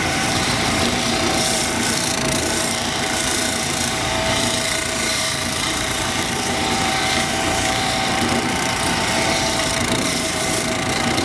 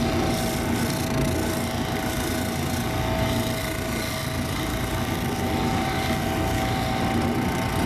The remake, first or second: first